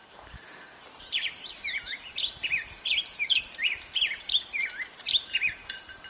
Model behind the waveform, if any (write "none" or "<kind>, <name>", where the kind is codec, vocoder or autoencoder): vocoder, BigVGAN v2